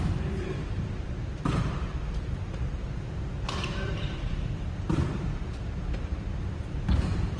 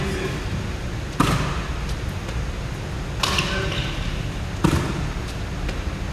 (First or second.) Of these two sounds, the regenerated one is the first